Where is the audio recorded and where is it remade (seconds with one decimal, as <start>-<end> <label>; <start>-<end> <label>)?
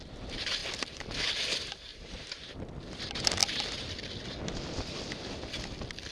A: 0.0-1.9 recorded; 1.9-3.0 remade; 3.0-6.1 recorded